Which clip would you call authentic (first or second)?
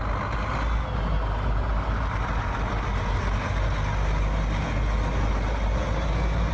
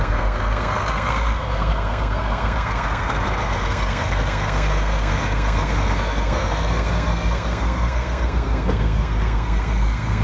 first